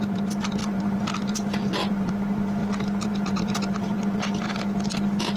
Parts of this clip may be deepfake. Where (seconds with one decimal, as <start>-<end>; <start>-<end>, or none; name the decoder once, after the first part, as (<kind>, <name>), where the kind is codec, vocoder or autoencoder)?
0.6-2.1 (vocoder, BigVGAN v2); 2.6-4.0